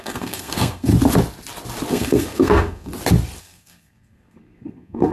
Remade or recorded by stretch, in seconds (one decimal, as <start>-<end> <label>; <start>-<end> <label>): 0.0-0.9 remade; 0.9-1.9 recorded; 1.9-2.9 remade; 2.9-3.4 recorded; 3.4-5.1 remade